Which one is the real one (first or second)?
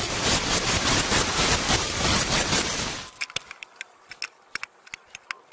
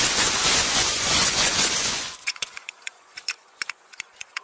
first